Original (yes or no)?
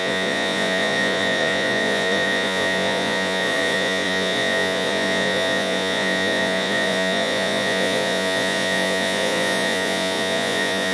no